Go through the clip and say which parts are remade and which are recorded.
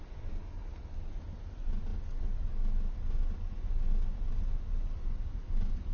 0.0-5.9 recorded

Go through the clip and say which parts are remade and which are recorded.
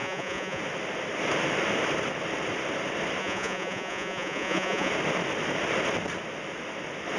0.0-0.6 remade; 0.6-3.2 recorded; 3.2-4.9 remade; 4.9-7.2 recorded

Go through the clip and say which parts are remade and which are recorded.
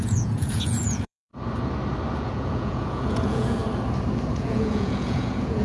0.0-1.3 remade; 1.3-2.2 recorded; 2.2-3.6 remade; 3.6-4.3 recorded; 4.3-5.6 remade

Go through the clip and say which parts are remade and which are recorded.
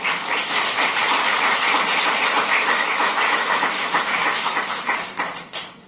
0.0-2.6 recorded; 2.6-4.9 remade; 4.9-5.9 recorded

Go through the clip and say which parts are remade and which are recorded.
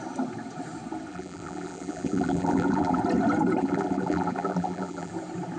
0.0-1.1 recorded; 1.1-3.0 remade; 3.0-3.6 recorded; 3.6-5.1 remade; 5.1-5.6 recorded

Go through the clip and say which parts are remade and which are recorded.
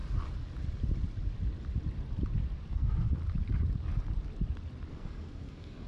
0.0-2.7 recorded; 2.7-3.2 remade; 3.2-4.9 recorded; 4.9-5.9 remade